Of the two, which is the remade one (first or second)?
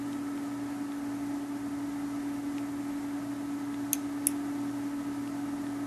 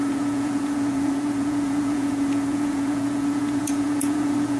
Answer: second